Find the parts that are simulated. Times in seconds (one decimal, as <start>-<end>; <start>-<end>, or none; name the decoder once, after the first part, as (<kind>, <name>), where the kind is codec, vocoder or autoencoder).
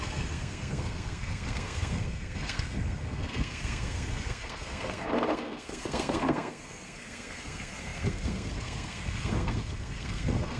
0.0-10.6 (codec, SNAC)